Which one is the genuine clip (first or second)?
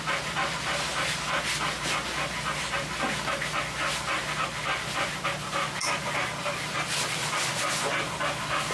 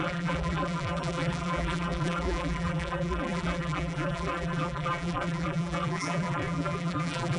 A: first